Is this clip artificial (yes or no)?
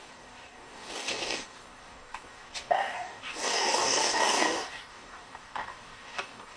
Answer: yes